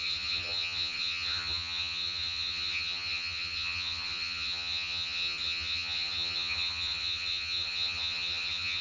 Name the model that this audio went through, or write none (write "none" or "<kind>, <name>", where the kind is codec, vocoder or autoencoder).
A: vocoder, HiFi-GAN